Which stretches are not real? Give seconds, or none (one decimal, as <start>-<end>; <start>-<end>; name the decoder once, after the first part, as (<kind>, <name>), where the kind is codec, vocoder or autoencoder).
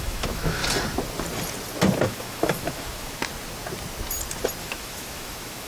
0.0-0.6 (autoencoder, DAC-VAE); 2.0-3.2; 4.6-5.7